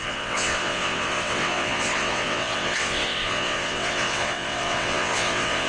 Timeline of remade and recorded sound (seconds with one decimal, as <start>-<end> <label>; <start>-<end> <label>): 0.0-5.7 remade